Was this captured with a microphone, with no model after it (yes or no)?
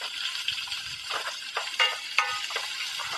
yes